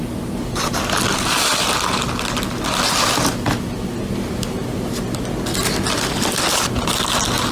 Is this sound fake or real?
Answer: real